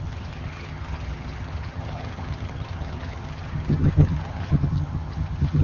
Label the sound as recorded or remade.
remade